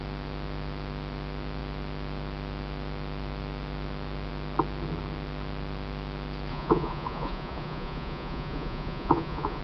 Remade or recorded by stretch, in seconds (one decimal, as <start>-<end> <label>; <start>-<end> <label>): 0.0-6.5 recorded; 6.5-9.6 remade